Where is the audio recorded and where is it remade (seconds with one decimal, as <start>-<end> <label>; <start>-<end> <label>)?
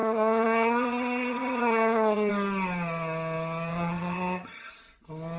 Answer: 0.0-2.3 remade; 2.3-3.7 recorded; 3.7-4.7 remade; 4.7-5.4 recorded